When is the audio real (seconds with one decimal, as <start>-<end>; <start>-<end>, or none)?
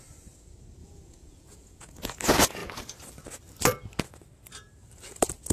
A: 0.0-0.8; 2.2-5.5